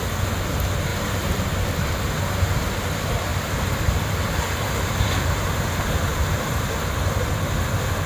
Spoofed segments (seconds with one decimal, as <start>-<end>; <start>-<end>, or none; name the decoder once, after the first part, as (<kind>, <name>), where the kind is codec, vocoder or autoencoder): 0.9-1.6 (vocoder, BigVGAN v2); 3.3-5.6; 6.1-6.6